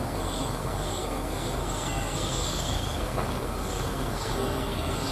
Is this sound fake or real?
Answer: fake